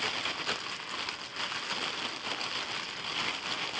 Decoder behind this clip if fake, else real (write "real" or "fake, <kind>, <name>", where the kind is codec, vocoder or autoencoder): real